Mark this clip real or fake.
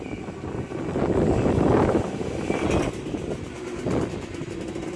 real